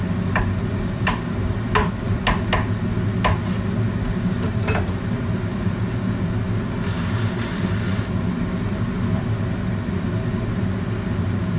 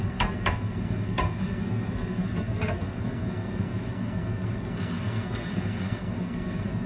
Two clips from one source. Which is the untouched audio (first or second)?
first